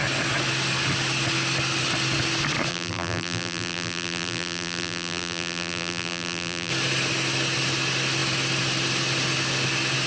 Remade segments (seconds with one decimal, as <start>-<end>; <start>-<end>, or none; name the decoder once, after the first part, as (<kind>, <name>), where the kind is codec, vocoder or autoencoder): 2.7-6.7 (vocoder, BigVGAN v2)